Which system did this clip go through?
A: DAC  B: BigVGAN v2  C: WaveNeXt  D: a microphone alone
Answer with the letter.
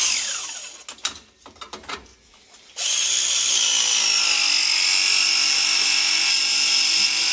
D